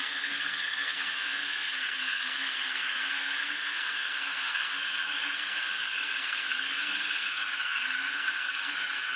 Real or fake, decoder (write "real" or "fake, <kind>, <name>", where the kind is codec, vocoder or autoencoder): fake, codec, SNAC